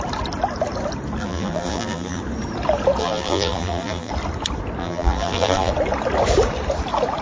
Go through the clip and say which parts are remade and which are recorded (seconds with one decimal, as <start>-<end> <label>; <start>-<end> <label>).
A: 0.0-1.2 recorded; 1.2-2.2 remade; 2.2-3.0 recorded; 3.0-4.1 remade; 4.1-4.8 recorded; 4.8-5.7 remade; 5.7-7.2 recorded